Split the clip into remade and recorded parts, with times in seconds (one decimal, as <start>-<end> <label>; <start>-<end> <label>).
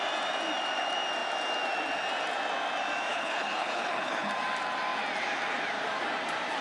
0.0-3.1 recorded; 3.1-4.3 remade; 4.3-6.6 recorded